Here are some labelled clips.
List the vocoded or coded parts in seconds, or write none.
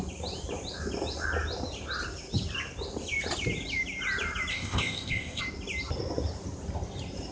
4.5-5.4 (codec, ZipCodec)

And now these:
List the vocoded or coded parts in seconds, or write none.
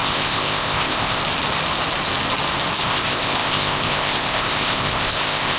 0.0-1.2 (codec, ZipCodec); 2.8-5.6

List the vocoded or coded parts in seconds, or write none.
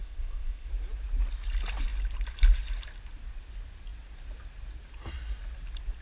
0.0-0.7 (codec, ZipCodec)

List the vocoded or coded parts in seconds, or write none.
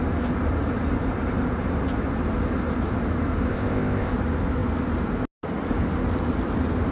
3.5-4.1 (codec, ZipCodec)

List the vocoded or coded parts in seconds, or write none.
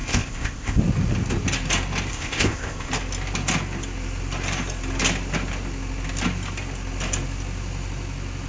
0.0-0.8 (codec, ZipCodec); 2.1-2.9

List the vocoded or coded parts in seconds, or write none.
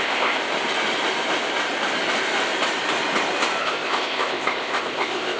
0.0-0.4 (codec, ZipCodec); 3.6-5.4